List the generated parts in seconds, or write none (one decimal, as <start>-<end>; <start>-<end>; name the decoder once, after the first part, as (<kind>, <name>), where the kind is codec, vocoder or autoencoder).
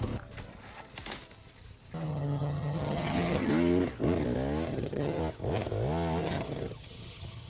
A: 2.1-3.5 (vocoder, HiFi-GAN); 4.7-5.2; 6.2-7.5